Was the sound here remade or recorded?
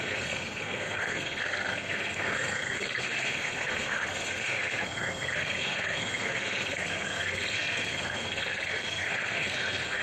remade